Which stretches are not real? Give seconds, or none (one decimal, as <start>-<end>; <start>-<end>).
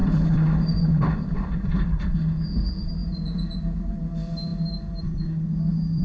0.0-3.0; 3.9-6.0